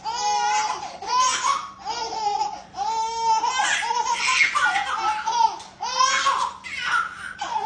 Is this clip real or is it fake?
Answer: real